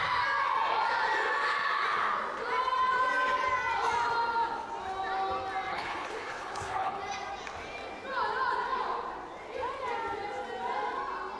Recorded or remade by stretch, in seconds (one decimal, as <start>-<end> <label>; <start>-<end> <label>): 0.0-5.7 recorded; 5.7-7.0 remade; 7.0-11.4 recorded